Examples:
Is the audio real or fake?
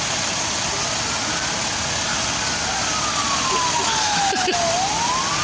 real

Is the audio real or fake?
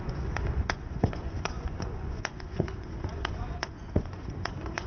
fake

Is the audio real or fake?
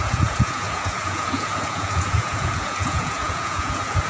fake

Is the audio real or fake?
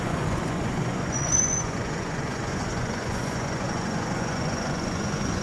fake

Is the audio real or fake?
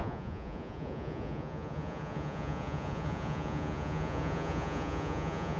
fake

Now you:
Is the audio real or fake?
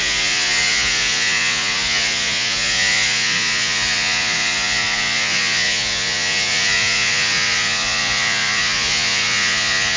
fake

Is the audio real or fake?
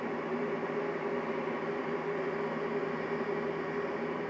real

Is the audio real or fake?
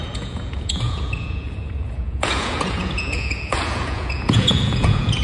fake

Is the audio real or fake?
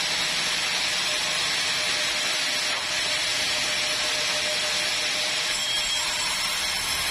real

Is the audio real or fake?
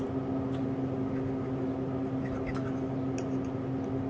real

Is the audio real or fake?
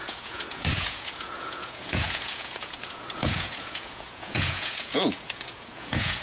fake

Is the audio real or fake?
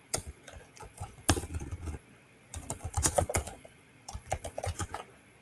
fake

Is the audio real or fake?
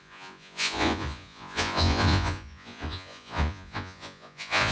fake